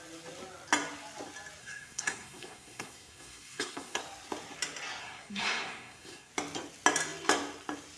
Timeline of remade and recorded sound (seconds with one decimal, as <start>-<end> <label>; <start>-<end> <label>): 0.0-1.6 recorded; 1.6-4.0 remade; 4.0-5.0 recorded; 5.0-6.3 remade; 6.3-8.0 recorded